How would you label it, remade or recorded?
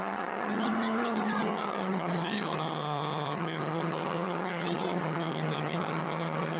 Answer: remade